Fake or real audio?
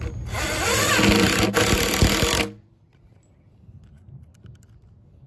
real